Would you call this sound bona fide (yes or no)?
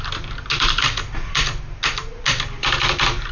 yes